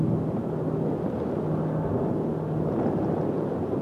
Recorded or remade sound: recorded